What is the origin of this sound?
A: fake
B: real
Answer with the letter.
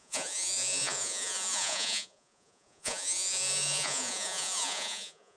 A